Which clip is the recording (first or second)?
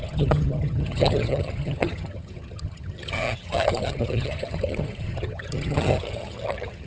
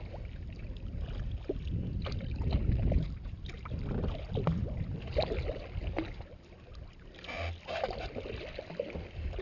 second